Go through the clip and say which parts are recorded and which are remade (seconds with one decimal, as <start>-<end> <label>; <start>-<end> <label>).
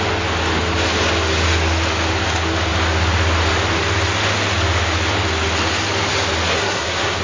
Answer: 0.0-6.5 recorded; 6.5-7.2 remade